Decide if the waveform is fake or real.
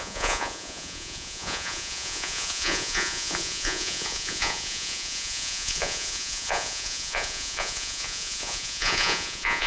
fake